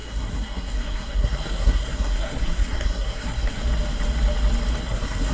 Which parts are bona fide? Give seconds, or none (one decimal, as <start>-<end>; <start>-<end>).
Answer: 3.6-4.8